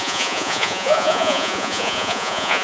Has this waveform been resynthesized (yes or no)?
yes